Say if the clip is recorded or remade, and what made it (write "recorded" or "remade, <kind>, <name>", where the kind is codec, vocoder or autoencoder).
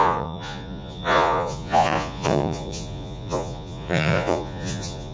remade, vocoder, Vocos